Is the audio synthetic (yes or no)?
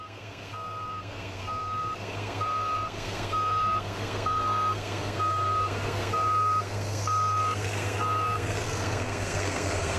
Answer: yes